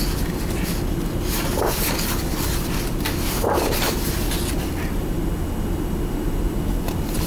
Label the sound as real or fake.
real